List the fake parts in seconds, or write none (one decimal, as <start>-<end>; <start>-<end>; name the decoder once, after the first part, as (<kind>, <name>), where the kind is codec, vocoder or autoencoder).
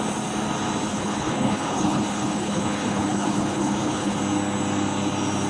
0.9-4.2 (codec, HILCodec)